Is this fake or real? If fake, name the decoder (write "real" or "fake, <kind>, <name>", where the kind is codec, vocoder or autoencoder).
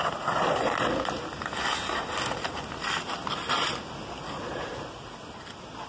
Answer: real